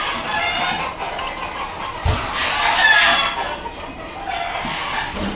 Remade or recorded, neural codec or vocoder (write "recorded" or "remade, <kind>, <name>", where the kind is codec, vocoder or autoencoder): recorded